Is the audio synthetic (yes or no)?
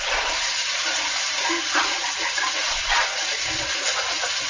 yes